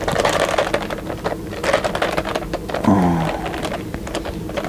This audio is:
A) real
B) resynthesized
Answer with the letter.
A